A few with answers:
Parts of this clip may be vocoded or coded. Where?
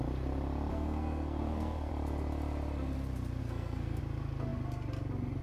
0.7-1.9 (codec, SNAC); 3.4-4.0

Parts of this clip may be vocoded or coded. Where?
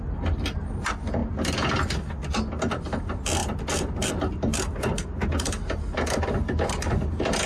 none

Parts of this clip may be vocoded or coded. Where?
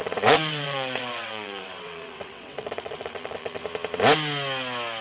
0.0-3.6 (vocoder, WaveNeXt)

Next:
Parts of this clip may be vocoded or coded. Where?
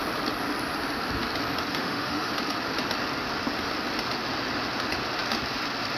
1.7-2.3 (autoencoder, DAC-VAE)